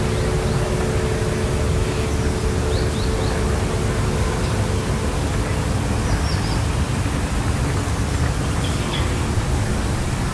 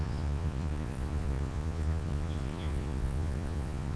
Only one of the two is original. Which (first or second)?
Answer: first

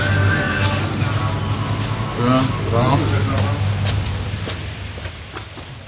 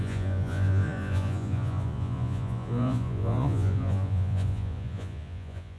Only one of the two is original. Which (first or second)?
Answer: first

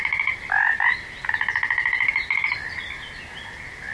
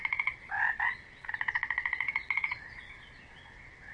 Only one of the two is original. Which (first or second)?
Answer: first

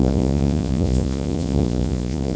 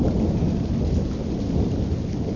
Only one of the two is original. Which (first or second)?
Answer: second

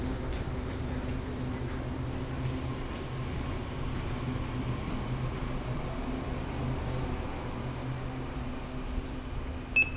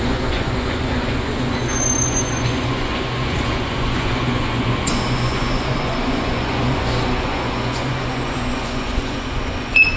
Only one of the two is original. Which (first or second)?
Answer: first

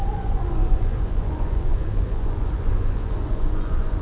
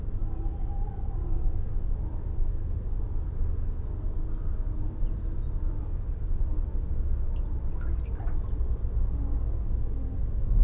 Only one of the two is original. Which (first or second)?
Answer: second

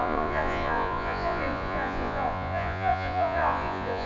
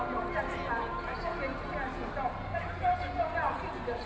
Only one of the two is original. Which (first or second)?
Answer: second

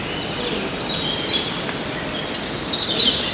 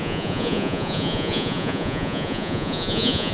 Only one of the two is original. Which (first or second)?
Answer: first